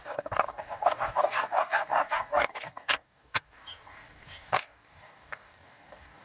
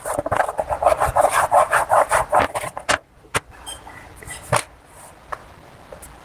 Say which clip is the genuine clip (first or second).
second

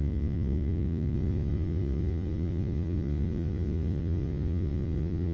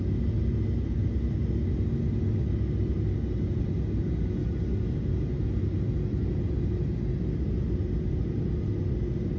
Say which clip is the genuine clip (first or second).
second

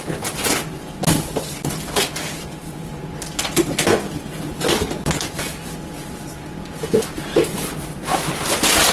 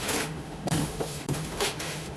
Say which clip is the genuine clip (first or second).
first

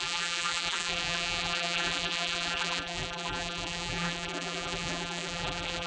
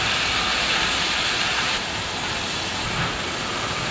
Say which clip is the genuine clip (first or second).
second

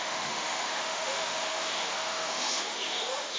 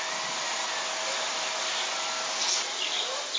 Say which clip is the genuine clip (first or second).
second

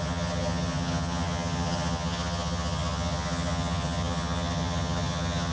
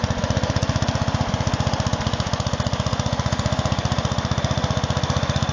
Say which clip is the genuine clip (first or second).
second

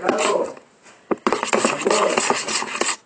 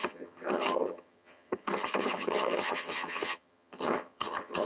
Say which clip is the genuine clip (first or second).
first